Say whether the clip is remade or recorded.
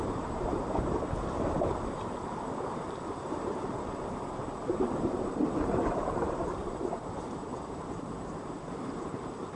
remade